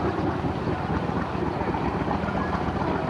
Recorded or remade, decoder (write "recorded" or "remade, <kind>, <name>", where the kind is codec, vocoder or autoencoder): recorded